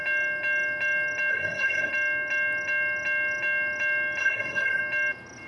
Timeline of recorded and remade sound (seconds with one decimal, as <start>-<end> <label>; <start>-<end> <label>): 0.0-1.3 recorded; 1.3-1.9 remade; 1.9-4.2 recorded; 4.2-4.8 remade; 4.8-5.5 recorded